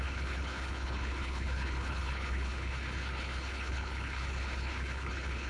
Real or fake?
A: fake